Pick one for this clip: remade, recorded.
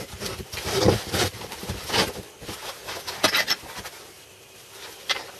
remade